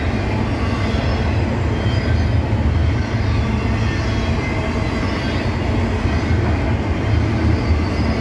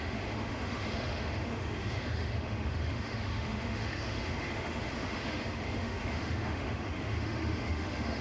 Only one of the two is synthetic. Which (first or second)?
second